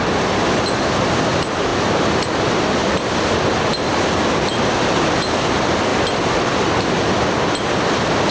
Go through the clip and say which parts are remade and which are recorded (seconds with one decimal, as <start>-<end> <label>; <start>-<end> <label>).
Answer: 0.0-8.3 recorded